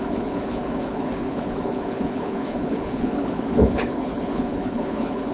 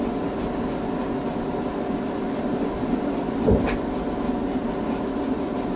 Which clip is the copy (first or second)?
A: first